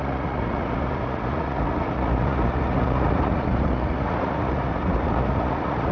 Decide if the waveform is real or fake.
fake